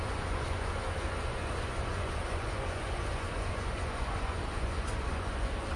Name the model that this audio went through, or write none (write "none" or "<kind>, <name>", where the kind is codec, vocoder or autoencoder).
vocoder, Vocos